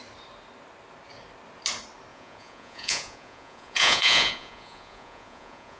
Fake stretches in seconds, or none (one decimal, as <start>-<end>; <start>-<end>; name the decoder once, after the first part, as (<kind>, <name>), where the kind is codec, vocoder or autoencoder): 2.1-5.8 (vocoder, Vocos)